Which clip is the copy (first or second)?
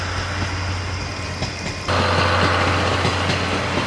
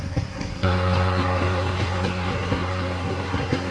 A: second